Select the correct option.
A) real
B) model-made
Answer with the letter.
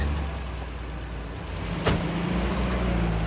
A